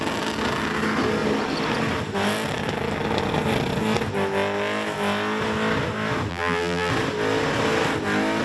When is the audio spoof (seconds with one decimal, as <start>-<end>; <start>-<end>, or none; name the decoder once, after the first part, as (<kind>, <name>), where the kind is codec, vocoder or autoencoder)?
6.3-6.9 (vocoder, BigVGAN v2)